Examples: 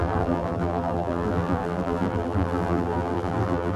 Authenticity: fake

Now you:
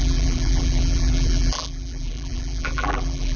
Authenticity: fake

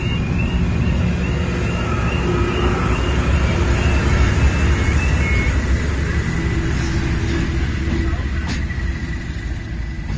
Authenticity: real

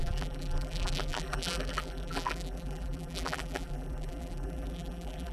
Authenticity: fake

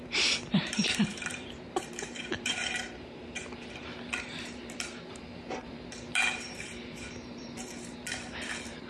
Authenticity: fake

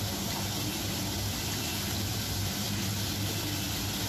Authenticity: real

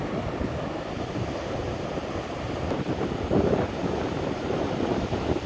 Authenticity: fake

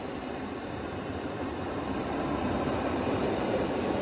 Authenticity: fake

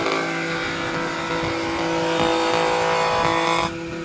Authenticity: real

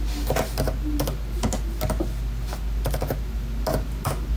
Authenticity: real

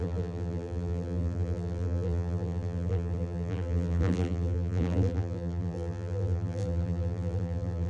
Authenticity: fake